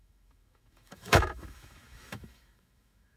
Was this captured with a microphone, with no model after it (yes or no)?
no